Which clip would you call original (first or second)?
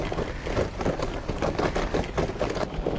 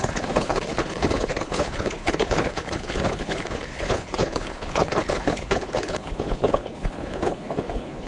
first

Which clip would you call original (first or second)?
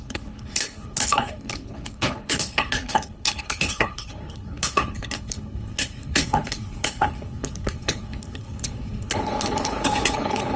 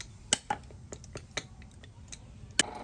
second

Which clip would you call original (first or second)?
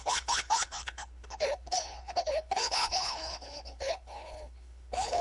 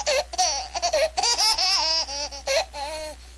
second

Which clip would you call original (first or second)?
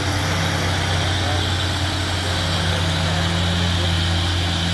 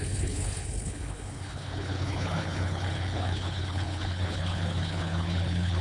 first